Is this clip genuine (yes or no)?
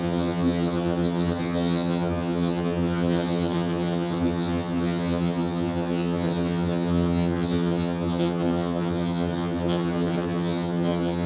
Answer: no